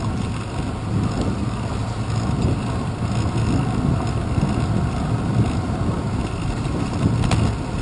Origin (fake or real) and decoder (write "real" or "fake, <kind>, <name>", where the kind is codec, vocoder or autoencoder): real